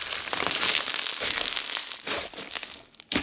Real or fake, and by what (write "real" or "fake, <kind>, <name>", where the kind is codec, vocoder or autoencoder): real